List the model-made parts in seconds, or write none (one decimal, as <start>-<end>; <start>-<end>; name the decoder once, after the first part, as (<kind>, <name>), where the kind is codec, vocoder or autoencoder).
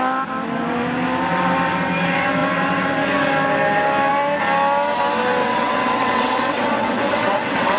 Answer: 5.4-7.8 (vocoder, WaveNeXt)